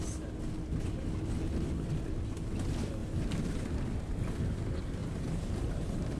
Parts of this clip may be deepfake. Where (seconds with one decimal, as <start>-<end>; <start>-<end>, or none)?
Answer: 3.0-3.8; 5.0-6.2